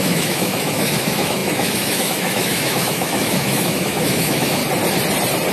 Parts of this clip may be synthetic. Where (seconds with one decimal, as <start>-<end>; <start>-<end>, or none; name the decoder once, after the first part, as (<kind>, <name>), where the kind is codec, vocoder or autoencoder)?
0.0-4.6 (autoencoder, DAC-VAE)